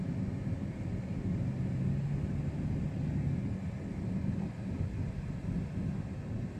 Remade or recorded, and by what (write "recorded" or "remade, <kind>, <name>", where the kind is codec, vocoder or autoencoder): recorded